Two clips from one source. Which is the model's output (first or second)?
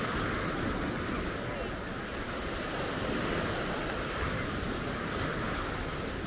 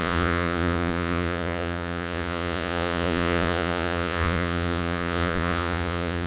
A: second